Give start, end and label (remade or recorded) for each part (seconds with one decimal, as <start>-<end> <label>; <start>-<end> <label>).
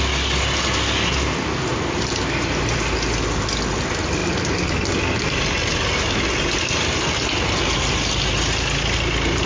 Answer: 0.0-1.7 recorded; 1.7-2.6 remade; 2.6-9.5 recorded